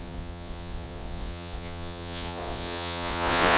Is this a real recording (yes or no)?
no